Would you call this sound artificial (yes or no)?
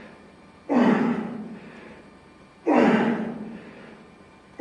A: no